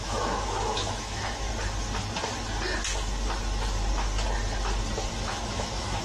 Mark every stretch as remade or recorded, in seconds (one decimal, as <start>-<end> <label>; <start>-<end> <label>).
0.0-1.5 remade; 1.5-5.1 recorded; 5.1-6.0 remade